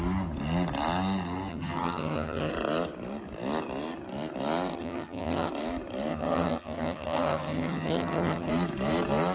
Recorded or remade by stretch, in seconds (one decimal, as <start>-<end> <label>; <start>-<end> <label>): 0.0-1.5 recorded; 1.5-2.5 remade; 2.5-4.7 recorded; 4.7-5.5 remade; 5.5-6.1 recorded; 6.1-8.5 remade; 8.5-9.3 recorded